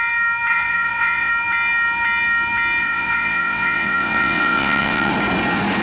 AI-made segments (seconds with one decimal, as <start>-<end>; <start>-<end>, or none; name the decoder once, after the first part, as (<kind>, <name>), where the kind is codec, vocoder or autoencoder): 0.5-1.3 (vocoder, WaveNeXt); 2.8-5.1